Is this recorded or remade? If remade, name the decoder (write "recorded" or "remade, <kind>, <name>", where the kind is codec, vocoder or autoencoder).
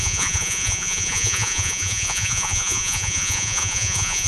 remade, vocoder, Vocos